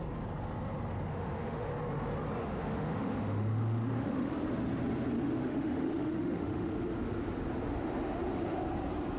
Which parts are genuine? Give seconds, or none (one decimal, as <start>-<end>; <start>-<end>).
0.0-1.1; 1.7-2.4; 4.3-5.4; 6.7-9.2